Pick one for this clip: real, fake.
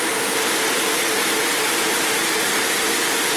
real